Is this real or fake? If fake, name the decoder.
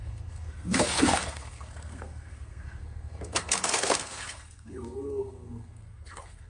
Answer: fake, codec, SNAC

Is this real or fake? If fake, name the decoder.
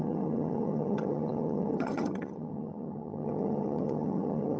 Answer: fake, vocoder, HiFi-GAN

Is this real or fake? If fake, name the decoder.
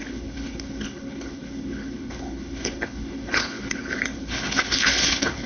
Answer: fake, codec, HILCodec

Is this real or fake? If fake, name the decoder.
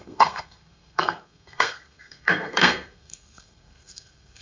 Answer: fake, codec, SNAC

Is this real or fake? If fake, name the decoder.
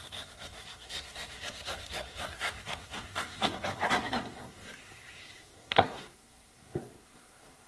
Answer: fake, codec, SNAC